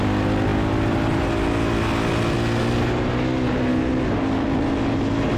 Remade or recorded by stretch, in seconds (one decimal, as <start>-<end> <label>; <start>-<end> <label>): 0.0-5.4 recorded